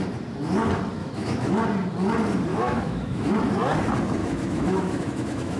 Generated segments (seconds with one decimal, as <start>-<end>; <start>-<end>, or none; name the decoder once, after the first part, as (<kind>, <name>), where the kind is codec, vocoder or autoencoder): 1.0-1.5 (autoencoder, DAC-VAE); 2.5-3.3; 4.2-5.6